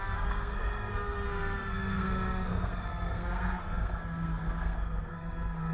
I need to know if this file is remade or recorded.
remade